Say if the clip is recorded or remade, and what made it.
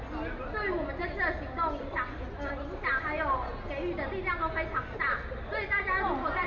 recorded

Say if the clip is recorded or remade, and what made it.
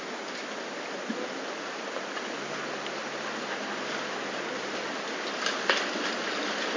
recorded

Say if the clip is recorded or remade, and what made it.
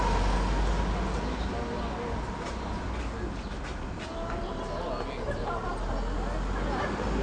recorded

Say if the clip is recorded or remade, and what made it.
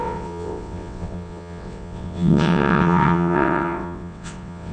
remade, vocoder, WaveNeXt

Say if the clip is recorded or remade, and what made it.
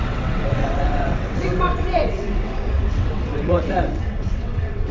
remade, vocoder, WaveNeXt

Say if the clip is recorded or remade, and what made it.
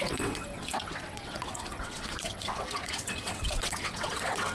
remade, vocoder, WaveNeXt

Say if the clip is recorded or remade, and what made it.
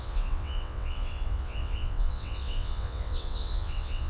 remade, vocoder, WaveNeXt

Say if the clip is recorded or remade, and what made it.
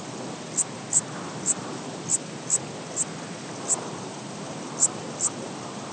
recorded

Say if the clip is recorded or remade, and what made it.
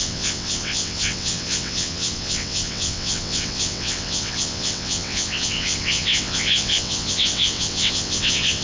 remade, vocoder, WaveNeXt